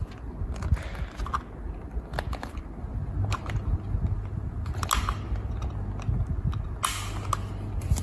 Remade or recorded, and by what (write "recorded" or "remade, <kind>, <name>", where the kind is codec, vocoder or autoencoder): recorded